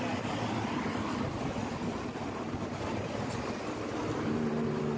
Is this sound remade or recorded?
recorded